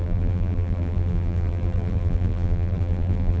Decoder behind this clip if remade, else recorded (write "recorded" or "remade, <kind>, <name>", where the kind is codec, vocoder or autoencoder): remade, vocoder, BigVGAN v2